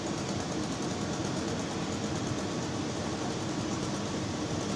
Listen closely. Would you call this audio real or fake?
real